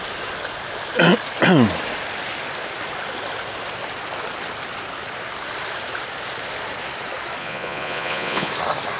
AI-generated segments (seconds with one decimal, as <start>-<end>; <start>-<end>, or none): 7.4-8.5